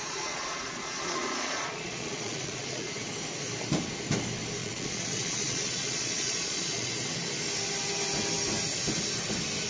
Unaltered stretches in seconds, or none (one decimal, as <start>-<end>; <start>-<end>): 2.9-4.6; 6.9-9.7